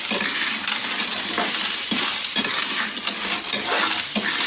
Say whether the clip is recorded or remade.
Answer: recorded